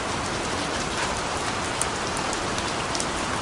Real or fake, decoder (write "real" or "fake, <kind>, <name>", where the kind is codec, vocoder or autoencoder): real